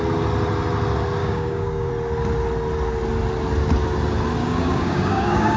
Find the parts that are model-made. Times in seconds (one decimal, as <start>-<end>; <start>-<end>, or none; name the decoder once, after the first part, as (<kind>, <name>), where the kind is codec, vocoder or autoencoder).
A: 1.2-1.9 (codec, DAC); 4.4-5.6